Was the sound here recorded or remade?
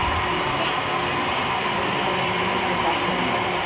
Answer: recorded